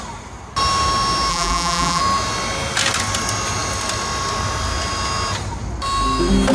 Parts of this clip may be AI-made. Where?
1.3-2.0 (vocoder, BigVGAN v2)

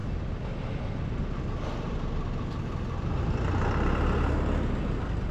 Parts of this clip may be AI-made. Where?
none

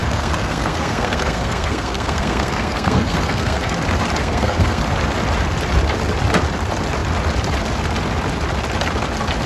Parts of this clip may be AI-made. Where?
0.0-3.7 (codec, SNAC); 4.2-4.8

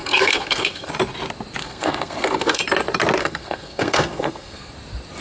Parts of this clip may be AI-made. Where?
0.0-0.9 (codec, SNAC); 1.6-2.6; 3.2-4.7

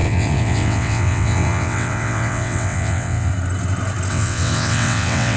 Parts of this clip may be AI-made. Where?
0.0-3.3 (vocoder, WaveNeXt); 4.1-5.4

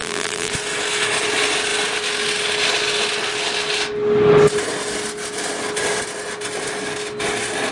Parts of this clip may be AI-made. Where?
0.0-0.5 (vocoder, BigVGAN v2)